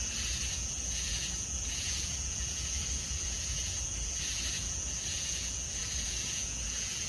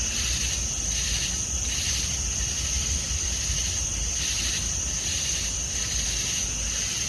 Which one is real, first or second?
second